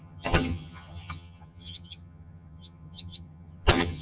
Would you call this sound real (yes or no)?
no